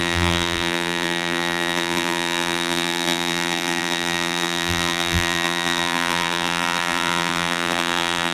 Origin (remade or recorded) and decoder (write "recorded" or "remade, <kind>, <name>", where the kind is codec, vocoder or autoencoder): remade, vocoder, BigVGAN v2